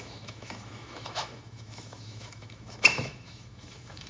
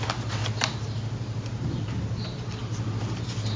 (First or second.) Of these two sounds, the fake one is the first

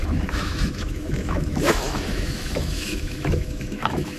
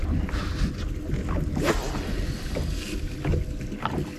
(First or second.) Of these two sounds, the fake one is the first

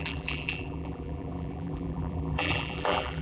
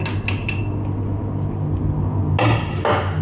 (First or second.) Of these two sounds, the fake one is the first